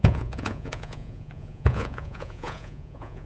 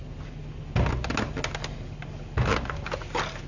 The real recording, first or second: second